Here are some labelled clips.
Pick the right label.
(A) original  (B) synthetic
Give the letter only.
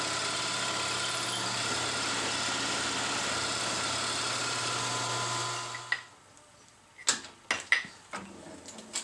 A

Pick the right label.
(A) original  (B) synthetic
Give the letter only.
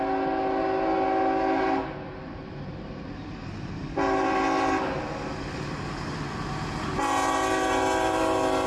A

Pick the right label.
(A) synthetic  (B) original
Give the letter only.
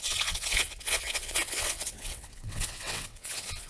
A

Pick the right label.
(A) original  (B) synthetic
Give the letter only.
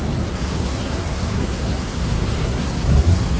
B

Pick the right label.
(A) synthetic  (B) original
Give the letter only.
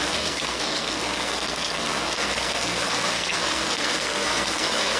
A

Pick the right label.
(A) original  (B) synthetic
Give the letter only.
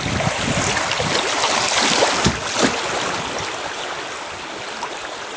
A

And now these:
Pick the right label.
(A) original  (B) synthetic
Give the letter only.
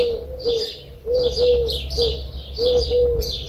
A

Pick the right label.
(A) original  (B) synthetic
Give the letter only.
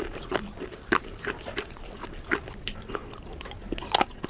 A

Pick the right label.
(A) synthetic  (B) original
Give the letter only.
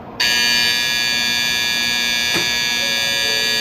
B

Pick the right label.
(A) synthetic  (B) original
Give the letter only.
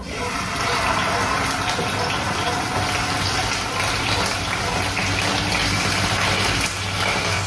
B